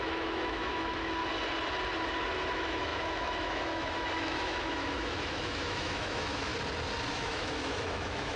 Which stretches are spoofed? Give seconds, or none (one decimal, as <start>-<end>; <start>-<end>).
0.0-1.2; 2.5-6.5; 7.1-8.4